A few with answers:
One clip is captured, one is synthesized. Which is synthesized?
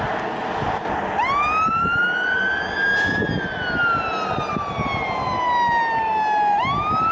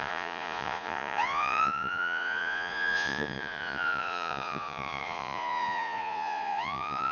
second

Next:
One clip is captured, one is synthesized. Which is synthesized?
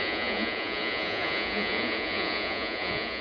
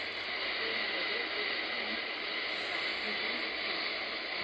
first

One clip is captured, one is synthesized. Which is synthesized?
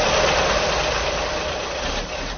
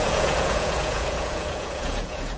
second